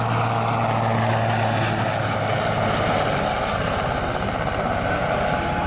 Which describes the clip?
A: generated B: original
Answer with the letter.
B